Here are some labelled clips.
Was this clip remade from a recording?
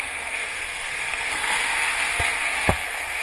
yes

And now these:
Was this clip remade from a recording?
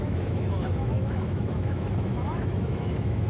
yes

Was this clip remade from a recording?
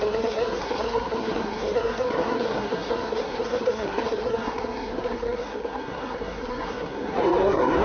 yes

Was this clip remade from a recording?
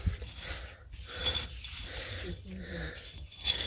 no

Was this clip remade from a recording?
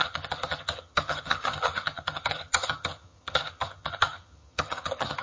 yes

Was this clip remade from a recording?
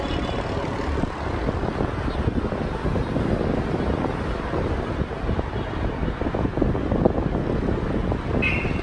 no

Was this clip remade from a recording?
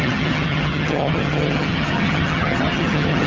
yes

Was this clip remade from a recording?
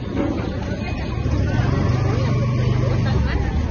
no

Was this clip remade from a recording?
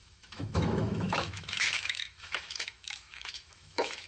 yes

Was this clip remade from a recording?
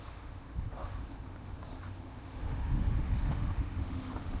yes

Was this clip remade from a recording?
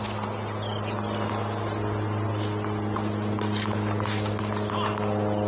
no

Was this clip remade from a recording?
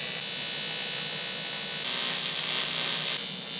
no